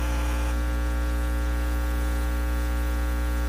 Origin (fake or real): real